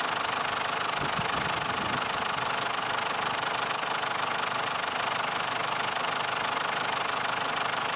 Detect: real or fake real